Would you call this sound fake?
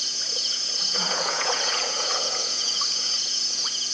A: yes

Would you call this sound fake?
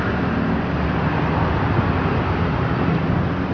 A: no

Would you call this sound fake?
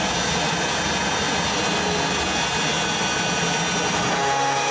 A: no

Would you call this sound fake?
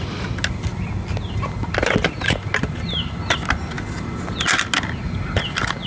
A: no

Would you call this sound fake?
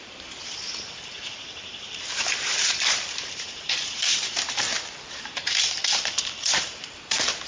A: yes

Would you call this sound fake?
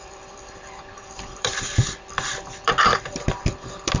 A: yes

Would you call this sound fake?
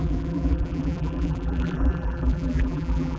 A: yes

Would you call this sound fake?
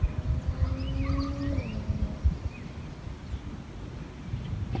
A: no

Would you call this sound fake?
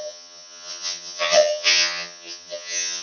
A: yes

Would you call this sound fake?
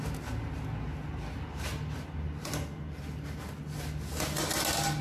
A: no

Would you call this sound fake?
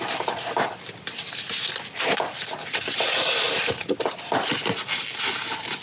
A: no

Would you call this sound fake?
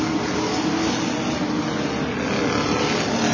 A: no